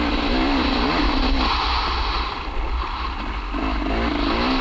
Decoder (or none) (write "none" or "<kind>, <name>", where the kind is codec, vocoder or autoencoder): none